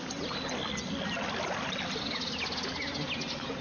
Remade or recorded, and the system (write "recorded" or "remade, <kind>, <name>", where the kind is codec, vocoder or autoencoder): recorded